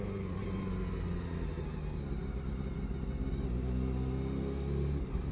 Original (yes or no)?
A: yes